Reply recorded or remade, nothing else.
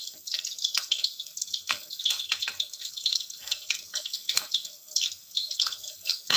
remade